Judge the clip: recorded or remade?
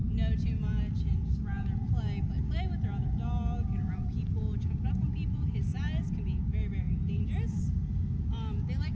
recorded